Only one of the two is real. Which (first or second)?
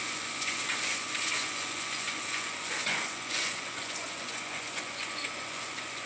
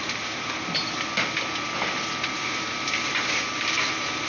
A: second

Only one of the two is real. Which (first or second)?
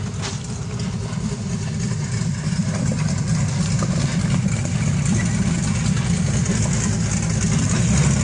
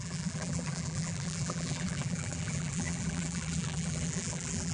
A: first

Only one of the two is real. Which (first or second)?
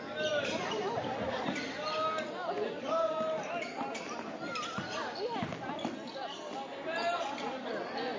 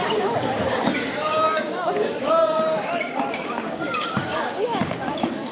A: first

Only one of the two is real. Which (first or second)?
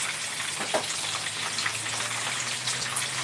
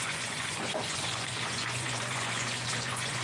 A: first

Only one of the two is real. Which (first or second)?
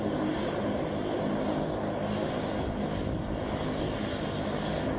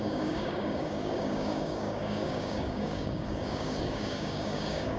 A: first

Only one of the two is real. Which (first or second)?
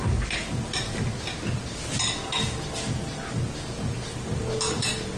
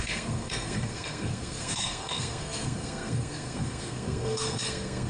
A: first